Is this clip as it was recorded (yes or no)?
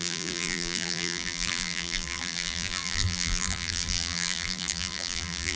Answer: no